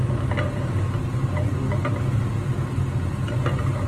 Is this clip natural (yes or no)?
yes